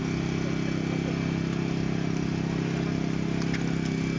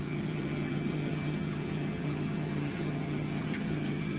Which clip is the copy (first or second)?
second